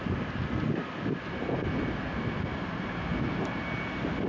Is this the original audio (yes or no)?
yes